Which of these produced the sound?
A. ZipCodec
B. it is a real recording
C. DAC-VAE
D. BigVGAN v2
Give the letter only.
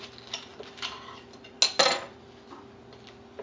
B